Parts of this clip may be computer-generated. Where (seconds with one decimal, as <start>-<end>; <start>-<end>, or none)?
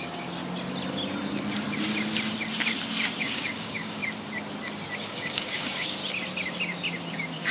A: 0.0-0.4; 3.2-4.0; 5.0-6.0; 7.1-7.5